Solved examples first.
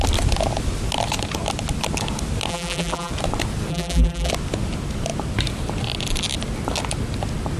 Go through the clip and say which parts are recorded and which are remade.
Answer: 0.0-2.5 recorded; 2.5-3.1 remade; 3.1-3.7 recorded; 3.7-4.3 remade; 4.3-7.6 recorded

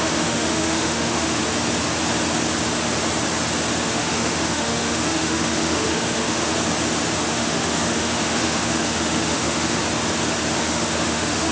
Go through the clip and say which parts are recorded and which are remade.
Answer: 0.0-1.4 remade; 1.4-3.7 recorded; 3.7-6.5 remade; 6.5-7.3 recorded; 7.3-9.8 remade; 9.8-10.6 recorded; 10.6-11.5 remade

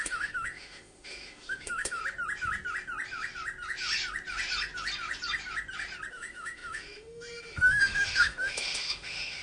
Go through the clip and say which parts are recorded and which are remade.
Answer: 0.0-2.0 remade; 2.0-6.1 recorded; 6.1-9.4 remade

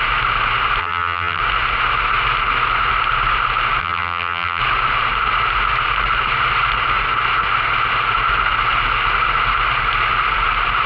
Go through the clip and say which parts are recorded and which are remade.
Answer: 0.0-0.8 recorded; 0.8-1.4 remade; 1.4-3.8 recorded; 3.8-4.6 remade; 4.6-10.9 recorded

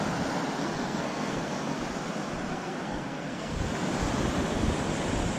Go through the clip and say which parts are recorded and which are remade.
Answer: 0.0-0.6 recorded; 0.6-1.8 remade; 1.8-2.5 recorded; 2.5-3.7 remade; 3.7-5.4 recorded